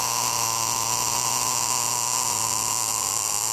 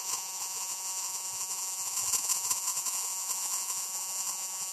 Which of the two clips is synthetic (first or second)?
second